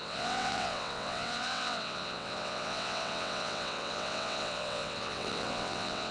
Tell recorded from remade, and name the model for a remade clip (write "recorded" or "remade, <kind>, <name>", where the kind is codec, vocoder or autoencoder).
remade, vocoder, WaveNeXt